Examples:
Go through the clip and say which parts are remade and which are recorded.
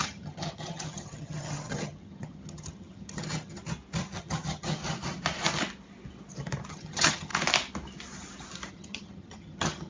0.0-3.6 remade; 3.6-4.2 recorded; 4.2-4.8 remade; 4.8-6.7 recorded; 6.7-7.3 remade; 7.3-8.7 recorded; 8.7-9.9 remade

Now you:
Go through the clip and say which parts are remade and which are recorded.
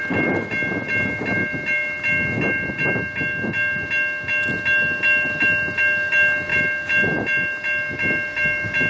0.0-8.9 recorded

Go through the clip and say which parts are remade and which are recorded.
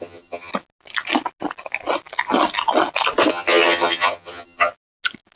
0.0-0.5 remade; 0.5-3.3 recorded; 3.3-4.7 remade; 4.7-5.4 recorded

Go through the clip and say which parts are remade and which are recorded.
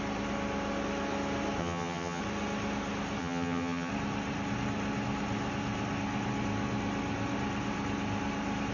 0.0-1.6 recorded; 1.6-2.2 remade; 2.2-3.2 recorded; 3.2-3.9 remade; 3.9-8.7 recorded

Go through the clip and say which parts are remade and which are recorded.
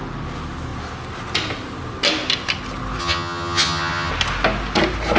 0.0-3.0 recorded; 3.0-4.1 remade; 4.1-5.2 recorded